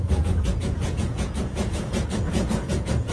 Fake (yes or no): yes